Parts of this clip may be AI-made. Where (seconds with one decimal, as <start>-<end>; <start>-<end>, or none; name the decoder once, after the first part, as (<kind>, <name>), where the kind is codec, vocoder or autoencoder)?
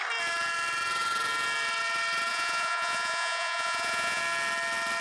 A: 2.3-4.2 (vocoder, Vocos)